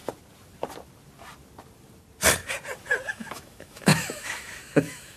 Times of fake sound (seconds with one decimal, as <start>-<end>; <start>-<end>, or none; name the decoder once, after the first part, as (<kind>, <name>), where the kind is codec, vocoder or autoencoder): 3.1-5.2 (autoencoder, DAC-VAE)